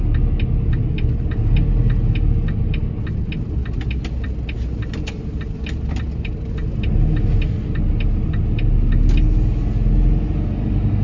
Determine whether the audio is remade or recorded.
recorded